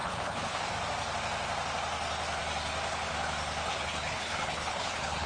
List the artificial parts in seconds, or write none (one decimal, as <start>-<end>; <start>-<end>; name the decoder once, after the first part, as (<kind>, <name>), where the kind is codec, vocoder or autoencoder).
0.0-0.7 (codec, HILCodec); 3.7-5.3